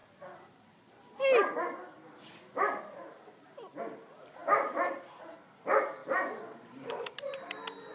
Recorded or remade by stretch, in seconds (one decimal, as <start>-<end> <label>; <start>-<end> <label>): 0.0-7.9 remade